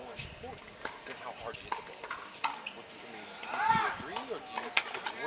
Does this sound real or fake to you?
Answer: real